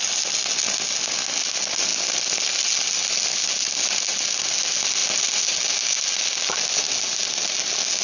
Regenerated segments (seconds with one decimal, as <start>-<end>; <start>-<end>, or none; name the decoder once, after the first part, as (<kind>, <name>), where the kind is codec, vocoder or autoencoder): none

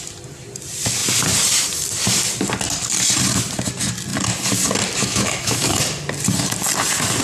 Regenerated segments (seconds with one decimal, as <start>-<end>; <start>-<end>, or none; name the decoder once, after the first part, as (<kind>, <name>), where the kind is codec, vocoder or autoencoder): 5.0-5.8 (autoencoder, DAC-VAE)